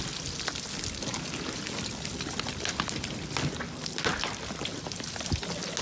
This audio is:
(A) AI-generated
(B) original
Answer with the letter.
B